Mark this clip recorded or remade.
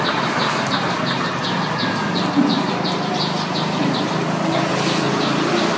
recorded